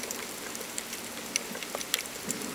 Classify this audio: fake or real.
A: real